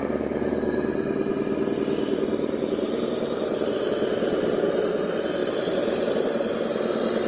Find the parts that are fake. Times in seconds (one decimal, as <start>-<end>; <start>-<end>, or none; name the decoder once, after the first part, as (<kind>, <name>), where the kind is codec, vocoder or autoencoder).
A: 2.3-3.7 (vocoder, BigVGAN v2); 5.4-6.1